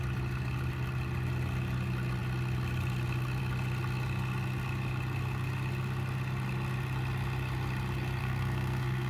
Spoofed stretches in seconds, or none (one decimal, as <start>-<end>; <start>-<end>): 8.2-9.1